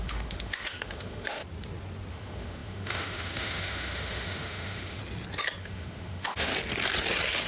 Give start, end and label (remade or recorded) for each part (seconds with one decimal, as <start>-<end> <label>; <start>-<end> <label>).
0.0-1.4 remade; 1.4-2.1 recorded; 2.1-5.0 remade; 5.0-5.6 recorded; 5.6-6.5 remade; 6.5-7.5 recorded